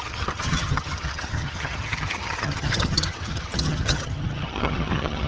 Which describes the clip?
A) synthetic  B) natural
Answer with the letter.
A